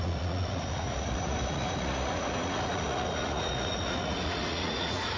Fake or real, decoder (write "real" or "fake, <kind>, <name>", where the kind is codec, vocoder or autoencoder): fake, vocoder, Vocos